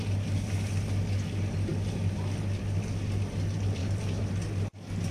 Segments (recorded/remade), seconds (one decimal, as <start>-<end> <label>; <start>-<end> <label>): 0.0-3.8 recorded; 3.8-4.3 remade; 4.3-5.1 recorded